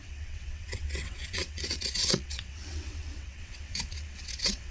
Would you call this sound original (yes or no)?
no